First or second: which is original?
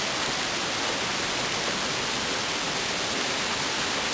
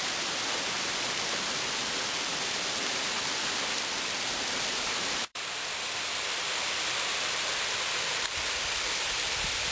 first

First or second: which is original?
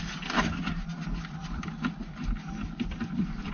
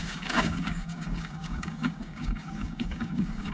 first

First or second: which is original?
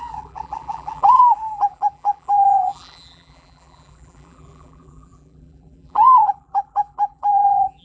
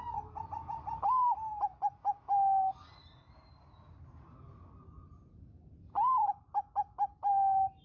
second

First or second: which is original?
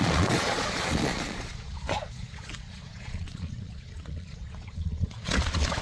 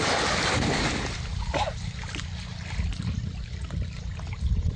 second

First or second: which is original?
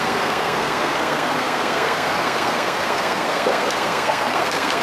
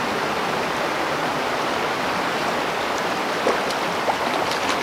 second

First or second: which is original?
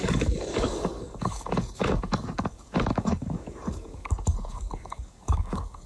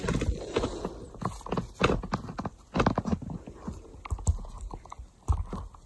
second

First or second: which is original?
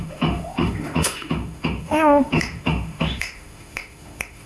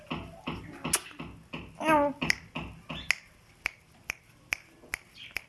second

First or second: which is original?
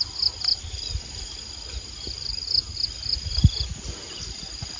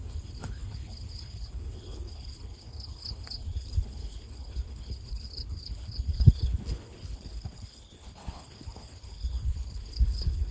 first